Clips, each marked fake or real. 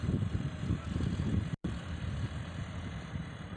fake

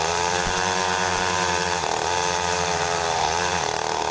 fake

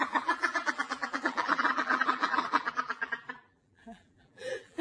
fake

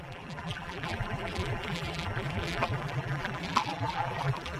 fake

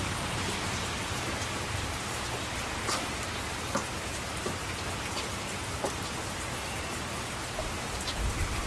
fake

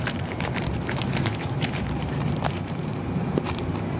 fake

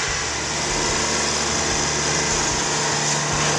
real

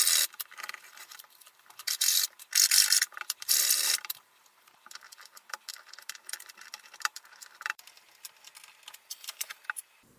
fake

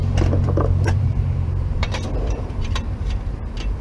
fake